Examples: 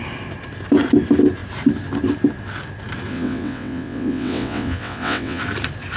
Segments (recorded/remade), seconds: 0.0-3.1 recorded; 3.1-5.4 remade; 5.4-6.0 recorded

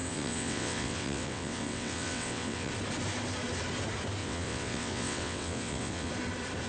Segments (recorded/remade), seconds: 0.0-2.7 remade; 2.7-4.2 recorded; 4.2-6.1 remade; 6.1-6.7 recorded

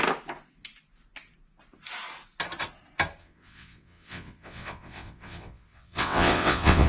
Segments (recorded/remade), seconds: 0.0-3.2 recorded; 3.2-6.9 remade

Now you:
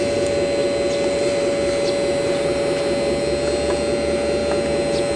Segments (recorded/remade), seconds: 0.0-5.2 recorded

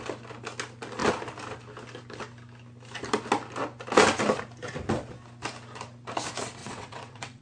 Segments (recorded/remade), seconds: 0.0-6.6 recorded; 6.6-7.4 remade